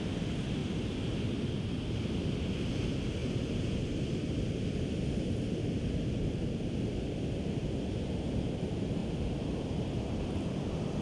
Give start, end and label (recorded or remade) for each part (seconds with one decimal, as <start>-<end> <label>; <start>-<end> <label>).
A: 0.0-0.6 recorded; 0.6-1.5 remade; 1.5-9.0 recorded; 9.0-11.0 remade